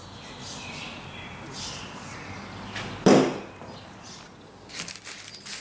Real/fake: real